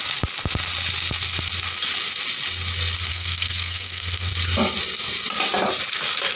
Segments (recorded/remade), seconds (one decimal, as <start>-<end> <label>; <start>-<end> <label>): 0.0-3.1 recorded; 3.1-4.3 remade; 4.3-6.4 recorded